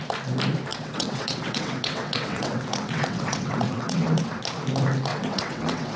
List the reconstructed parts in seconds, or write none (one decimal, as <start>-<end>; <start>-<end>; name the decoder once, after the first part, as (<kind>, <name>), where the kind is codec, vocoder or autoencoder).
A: 0.7-4.3 (vocoder, WaveNeXt); 5.1-6.0